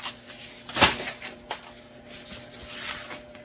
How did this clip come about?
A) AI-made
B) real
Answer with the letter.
B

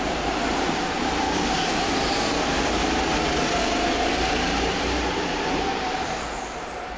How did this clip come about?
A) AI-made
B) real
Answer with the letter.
A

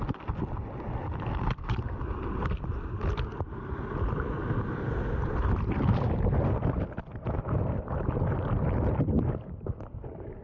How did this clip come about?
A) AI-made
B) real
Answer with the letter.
B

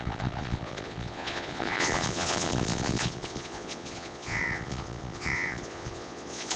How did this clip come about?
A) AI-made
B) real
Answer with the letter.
A